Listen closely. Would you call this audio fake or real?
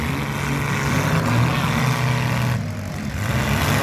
real